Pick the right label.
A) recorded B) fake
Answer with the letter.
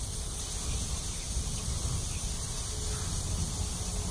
A